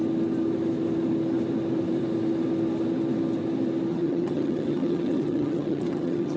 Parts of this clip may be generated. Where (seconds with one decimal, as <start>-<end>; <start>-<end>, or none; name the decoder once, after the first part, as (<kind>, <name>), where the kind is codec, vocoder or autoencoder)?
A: 3.9-6.4 (vocoder, HiFi-GAN)